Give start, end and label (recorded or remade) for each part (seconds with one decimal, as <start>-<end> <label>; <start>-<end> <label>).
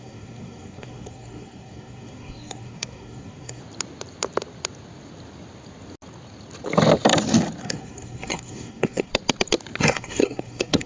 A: 0.0-3.6 remade; 3.6-7.6 recorded; 7.6-9.1 remade; 9.1-9.8 recorded; 9.8-10.9 remade